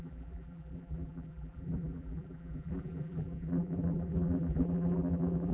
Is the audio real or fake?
fake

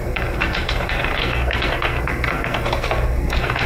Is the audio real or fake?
fake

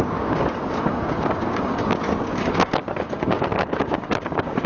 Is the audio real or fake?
fake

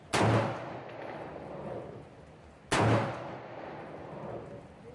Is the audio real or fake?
real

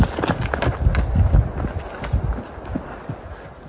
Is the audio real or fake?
real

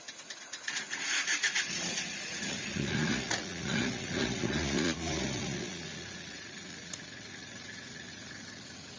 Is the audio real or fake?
fake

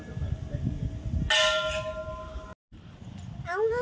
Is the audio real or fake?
real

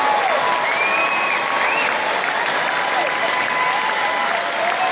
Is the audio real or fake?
real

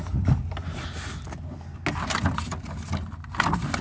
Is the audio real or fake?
real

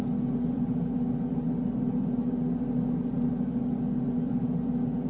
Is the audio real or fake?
real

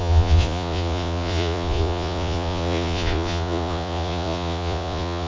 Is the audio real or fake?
fake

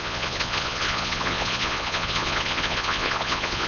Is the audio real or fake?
fake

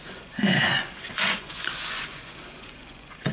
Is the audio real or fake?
fake